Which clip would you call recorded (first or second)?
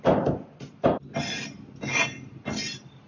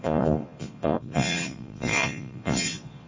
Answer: first